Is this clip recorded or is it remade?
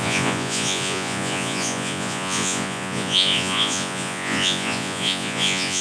remade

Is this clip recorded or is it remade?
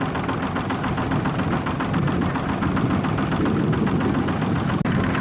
recorded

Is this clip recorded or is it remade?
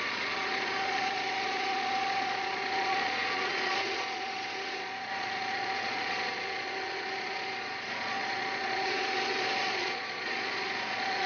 remade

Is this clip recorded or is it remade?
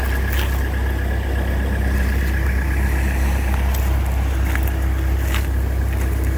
recorded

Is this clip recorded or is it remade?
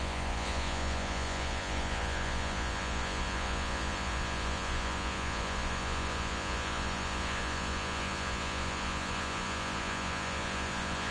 remade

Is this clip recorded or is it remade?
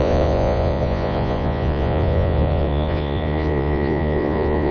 remade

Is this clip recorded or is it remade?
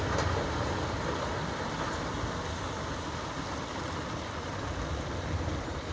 recorded